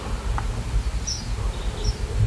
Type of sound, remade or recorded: recorded